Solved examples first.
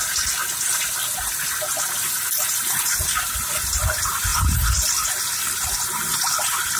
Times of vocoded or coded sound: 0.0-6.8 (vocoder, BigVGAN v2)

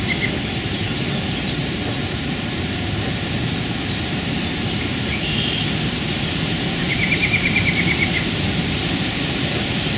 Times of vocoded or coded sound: 1.6-6.0 (vocoder, BigVGAN v2)

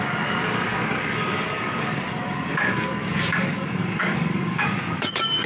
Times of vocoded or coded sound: 0.0-5.5 (codec, DAC)

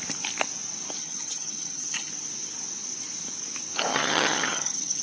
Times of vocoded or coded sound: 1.0-2.1 (vocoder, HiFi-GAN); 3.9-5.0